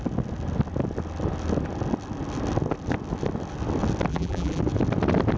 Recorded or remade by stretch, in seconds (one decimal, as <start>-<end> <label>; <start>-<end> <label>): 0.0-4.1 recorded; 4.1-4.6 remade; 4.6-5.4 recorded